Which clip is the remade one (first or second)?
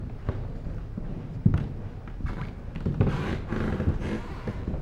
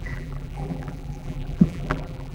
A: second